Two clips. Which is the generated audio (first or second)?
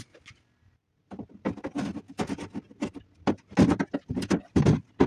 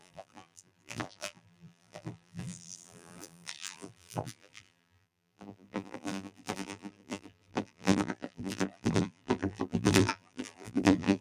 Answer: second